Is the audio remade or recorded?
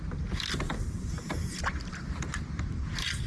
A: remade